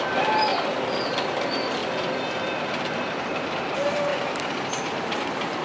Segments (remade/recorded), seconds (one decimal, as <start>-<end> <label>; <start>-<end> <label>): 0.0-0.5 remade; 0.5-1.0 recorded; 1.0-1.8 remade; 1.8-2.9 recorded; 2.9-4.1 remade; 4.1-4.9 recorded; 4.9-5.6 remade